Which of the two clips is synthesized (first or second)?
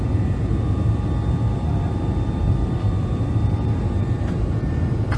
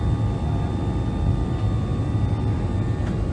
first